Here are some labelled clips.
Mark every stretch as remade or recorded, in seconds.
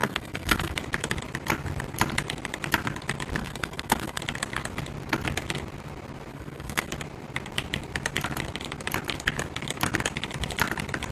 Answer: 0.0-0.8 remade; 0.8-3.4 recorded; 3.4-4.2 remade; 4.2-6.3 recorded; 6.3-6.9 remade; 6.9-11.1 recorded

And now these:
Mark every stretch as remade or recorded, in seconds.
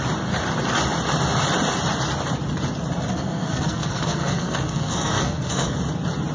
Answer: 0.0-3.1 recorded; 3.1-5.8 remade; 5.8-6.3 recorded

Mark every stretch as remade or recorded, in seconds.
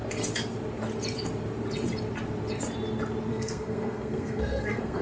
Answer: 0.0-3.3 recorded; 3.3-5.0 remade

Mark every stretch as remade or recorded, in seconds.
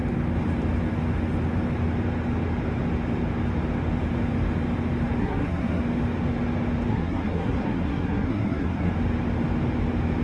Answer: 0.0-5.2 recorded; 5.2-5.8 remade; 5.8-6.9 recorded; 6.9-8.9 remade; 8.9-10.2 recorded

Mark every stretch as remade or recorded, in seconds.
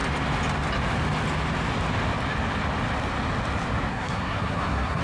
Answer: 0.0-3.9 recorded; 3.9-5.0 remade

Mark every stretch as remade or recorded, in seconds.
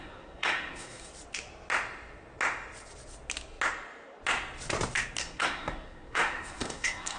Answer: 0.0-1.1 remade; 1.1-5.2 recorded; 5.2-7.2 remade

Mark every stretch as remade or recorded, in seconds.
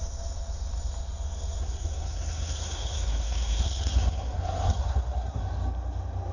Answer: 0.0-1.6 recorded; 1.6-5.4 remade; 5.4-6.3 recorded